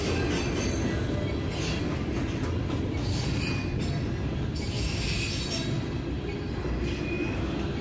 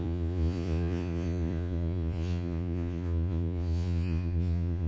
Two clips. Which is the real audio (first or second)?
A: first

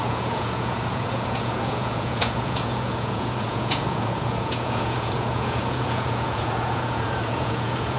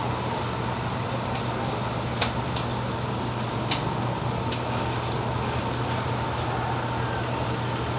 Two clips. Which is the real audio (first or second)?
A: second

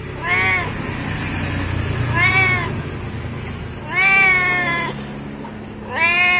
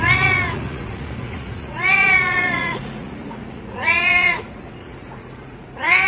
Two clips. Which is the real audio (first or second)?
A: first